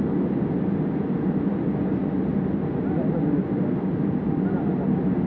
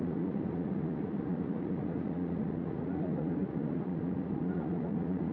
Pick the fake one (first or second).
second